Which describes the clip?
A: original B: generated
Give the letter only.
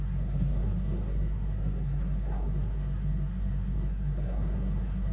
B